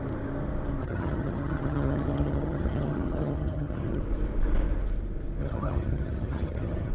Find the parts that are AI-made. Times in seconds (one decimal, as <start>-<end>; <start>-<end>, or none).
0.8-4.0; 5.4-6.9